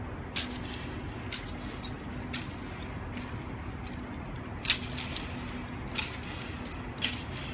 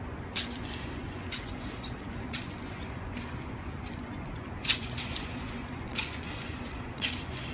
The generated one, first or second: second